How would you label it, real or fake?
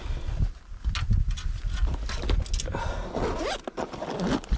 real